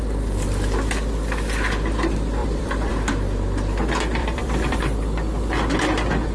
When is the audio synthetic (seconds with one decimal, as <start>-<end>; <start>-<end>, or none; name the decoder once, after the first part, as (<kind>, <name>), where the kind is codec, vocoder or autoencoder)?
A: 2.4-2.9 (vocoder, BigVGAN v2); 4.2-4.8